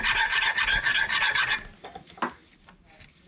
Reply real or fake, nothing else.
real